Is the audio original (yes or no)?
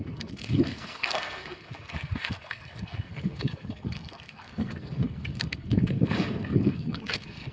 no